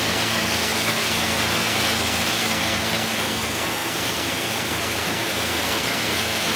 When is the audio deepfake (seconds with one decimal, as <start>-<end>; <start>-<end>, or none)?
0.0-6.6